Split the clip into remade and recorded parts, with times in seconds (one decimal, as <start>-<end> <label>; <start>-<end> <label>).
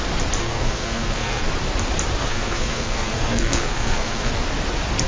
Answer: 0.0-0.4 recorded; 0.4-1.4 remade; 1.4-2.2 recorded; 2.2-4.3 remade; 4.3-5.1 recorded